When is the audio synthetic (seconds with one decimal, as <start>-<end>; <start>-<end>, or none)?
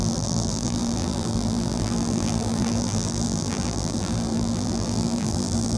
0.0-5.8